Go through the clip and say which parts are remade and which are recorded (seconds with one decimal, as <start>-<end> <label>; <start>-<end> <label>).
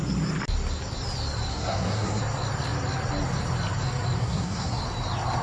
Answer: 0.0-1.5 recorded; 1.5-2.2 remade; 2.2-4.2 recorded; 4.2-4.8 remade; 4.8-5.4 recorded